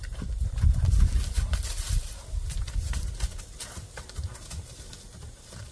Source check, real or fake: real